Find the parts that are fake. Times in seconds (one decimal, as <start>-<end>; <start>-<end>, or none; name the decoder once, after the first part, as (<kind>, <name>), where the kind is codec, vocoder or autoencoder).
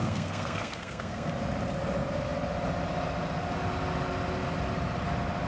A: 0.0-1.3 (codec, SNAC)